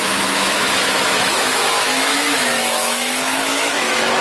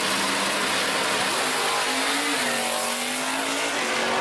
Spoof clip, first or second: first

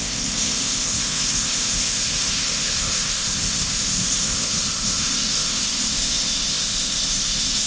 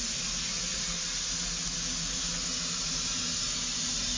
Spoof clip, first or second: first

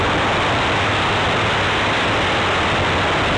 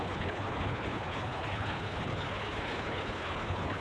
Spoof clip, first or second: second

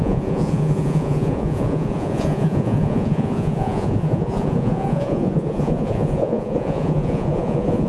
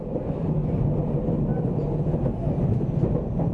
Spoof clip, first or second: first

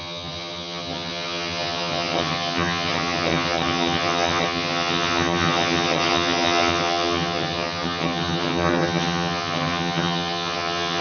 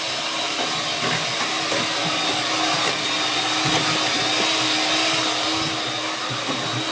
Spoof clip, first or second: first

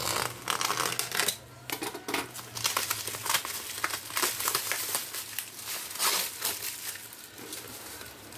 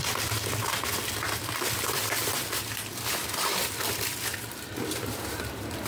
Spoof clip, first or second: second